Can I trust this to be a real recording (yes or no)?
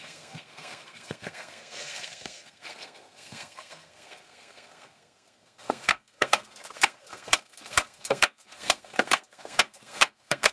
no